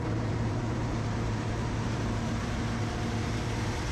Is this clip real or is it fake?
fake